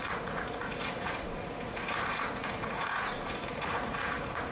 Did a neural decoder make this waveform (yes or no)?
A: yes